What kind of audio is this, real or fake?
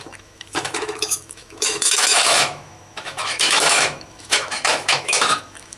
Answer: fake